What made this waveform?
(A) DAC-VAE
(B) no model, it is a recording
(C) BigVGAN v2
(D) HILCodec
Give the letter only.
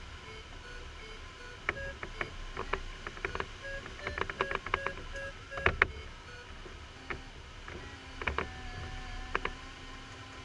B